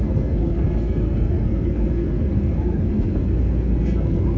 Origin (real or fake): fake